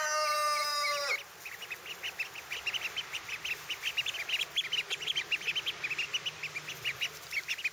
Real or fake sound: real